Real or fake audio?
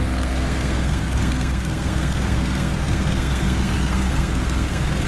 fake